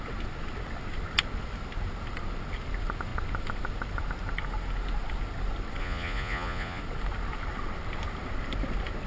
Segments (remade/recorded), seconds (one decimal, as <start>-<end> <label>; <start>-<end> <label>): 0.0-5.8 recorded; 5.8-6.8 remade; 6.8-9.1 recorded